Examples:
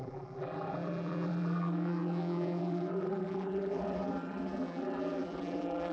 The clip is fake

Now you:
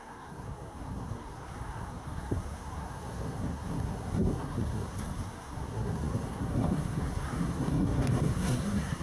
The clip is fake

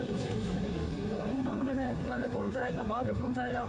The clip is fake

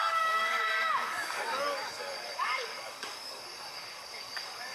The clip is fake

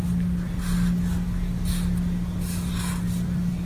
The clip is real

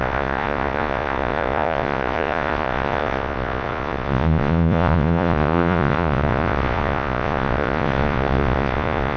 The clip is fake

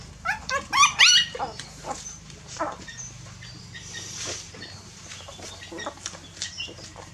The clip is fake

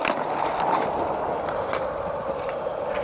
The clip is real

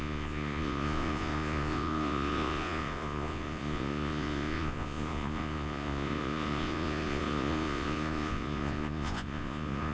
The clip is fake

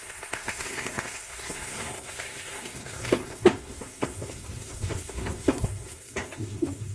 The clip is fake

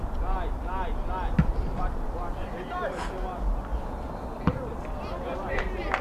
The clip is real